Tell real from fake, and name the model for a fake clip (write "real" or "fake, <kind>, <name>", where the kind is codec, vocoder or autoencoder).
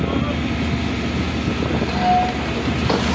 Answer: real